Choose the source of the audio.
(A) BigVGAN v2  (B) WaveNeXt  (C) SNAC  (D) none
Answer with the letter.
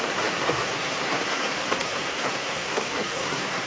C